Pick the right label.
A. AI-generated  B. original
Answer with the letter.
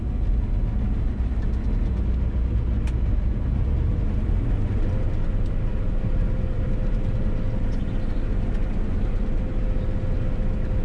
B